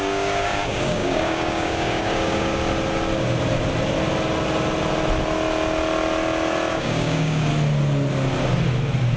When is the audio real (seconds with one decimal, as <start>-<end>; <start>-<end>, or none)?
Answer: 2.6-6.7; 7.5-9.2